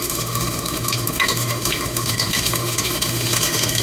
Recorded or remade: remade